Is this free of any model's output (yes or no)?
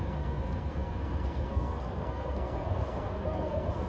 no